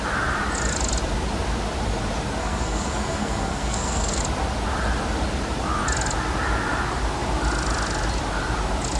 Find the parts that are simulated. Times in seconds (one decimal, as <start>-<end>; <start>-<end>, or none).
2.4-4.2